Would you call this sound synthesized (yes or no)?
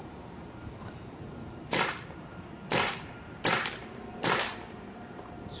yes